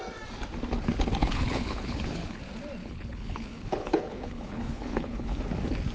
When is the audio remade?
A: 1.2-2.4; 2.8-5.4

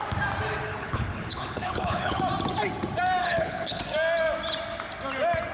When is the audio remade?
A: 0.7-2.2; 3.2-3.8

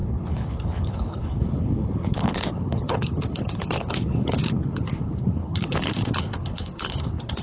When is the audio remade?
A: 0.0-7.4

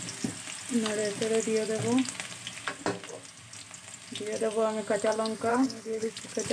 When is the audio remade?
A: 5.5-6.1

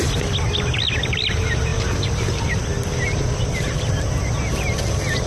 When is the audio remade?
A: none